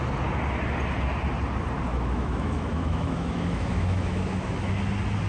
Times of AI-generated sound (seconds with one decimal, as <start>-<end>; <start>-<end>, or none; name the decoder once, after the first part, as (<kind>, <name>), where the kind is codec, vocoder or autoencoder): 1.9-4.8 (autoencoder, DAC-VAE)